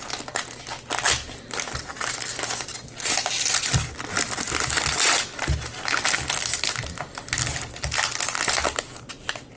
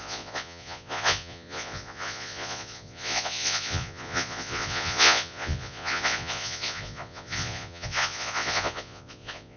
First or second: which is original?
first